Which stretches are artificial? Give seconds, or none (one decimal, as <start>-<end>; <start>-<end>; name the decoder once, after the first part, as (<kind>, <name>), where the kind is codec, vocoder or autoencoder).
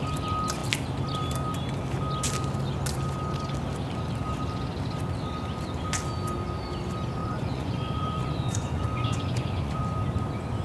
7.2-9.8 (vocoder, Vocos)